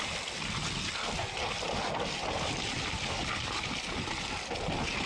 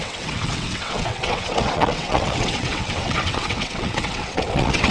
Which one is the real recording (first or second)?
first